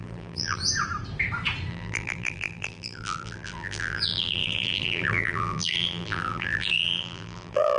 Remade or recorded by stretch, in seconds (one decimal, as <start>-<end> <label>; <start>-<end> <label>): 0.0-0.6 remade; 0.6-1.7 recorded; 1.7-7.8 remade